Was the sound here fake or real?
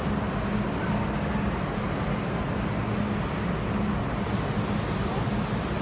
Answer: real